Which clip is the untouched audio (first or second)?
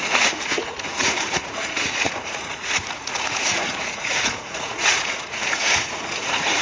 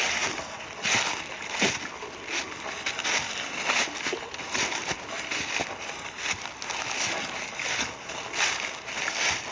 second